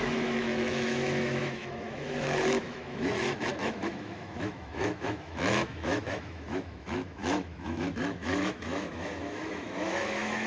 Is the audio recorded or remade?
remade